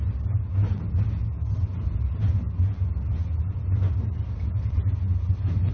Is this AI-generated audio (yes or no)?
no